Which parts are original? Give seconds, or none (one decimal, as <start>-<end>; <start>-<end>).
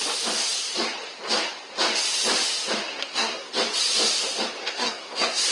0.0-2.9; 3.5-4.6